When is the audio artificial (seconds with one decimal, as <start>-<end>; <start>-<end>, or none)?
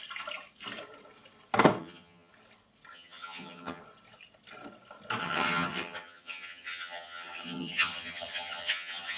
1.8-2.3; 2.9-3.8; 5.2-9.2